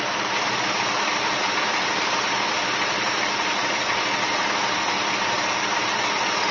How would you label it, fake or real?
real